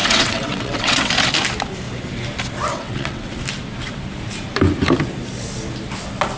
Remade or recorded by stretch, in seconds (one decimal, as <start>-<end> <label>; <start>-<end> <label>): 0.0-1.1 remade; 1.1-2.7 recorded; 2.7-3.4 remade; 3.4-6.4 recorded